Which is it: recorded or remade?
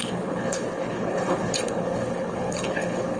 remade